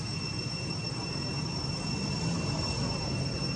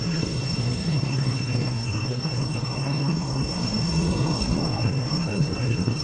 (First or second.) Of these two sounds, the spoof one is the second